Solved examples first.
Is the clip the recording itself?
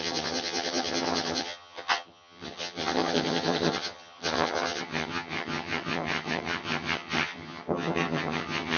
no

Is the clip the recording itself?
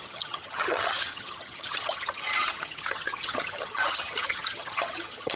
no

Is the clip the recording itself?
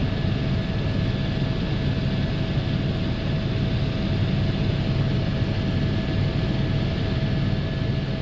yes